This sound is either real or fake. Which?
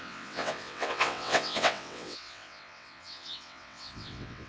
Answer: fake